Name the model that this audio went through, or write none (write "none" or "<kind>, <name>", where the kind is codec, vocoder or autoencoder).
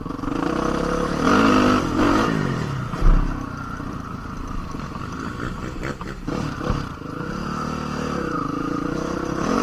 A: none